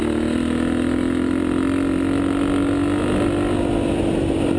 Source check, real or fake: real